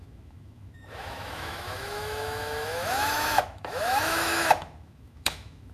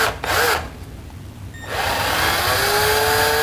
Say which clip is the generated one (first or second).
first